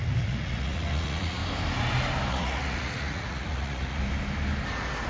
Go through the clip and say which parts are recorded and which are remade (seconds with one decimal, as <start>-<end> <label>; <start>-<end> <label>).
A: 0.0-1.4 remade; 1.4-2.3 recorded; 2.3-4.0 remade; 4.0-5.1 recorded